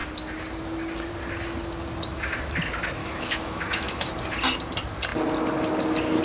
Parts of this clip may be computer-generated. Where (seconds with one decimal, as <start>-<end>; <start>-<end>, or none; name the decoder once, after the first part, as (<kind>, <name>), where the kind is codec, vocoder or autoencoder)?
3.0-4.2 (autoencoder, DAC-VAE)

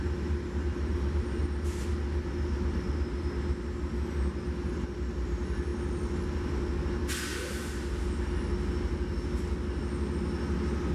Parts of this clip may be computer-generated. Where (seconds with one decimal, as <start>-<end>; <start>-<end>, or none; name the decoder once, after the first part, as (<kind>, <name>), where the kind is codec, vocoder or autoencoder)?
none

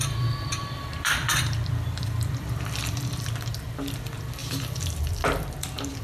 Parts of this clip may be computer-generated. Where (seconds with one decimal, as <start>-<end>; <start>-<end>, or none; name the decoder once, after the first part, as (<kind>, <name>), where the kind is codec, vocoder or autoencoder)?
0.0-6.0 (vocoder, BigVGAN v2)

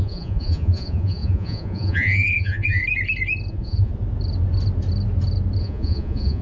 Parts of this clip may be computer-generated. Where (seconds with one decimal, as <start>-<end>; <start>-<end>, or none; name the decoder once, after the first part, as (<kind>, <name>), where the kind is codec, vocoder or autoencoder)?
0.0-2.8 (vocoder, Vocos); 3.5-3.9; 5.6-6.4

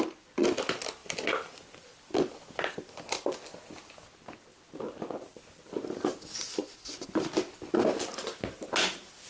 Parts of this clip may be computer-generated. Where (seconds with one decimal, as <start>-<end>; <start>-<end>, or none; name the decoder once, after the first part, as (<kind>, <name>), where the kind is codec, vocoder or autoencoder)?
none